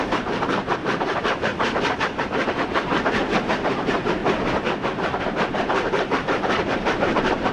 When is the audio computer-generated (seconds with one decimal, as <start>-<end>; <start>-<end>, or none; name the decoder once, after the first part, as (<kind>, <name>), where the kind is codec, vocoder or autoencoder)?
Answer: 0.0-1.5 (vocoder, BigVGAN v2); 2.2-4.2; 5.2-7.5